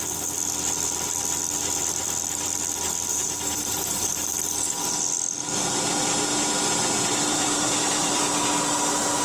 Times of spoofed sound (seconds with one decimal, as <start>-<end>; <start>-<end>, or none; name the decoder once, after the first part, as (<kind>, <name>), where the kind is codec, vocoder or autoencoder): 3.1-4.3 (vocoder, BigVGAN v2); 7.3-8.3